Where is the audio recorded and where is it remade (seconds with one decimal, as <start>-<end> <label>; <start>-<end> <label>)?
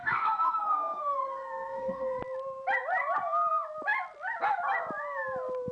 0.0-2.2 remade; 2.2-5.7 recorded